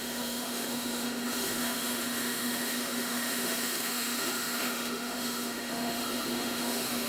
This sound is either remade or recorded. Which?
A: remade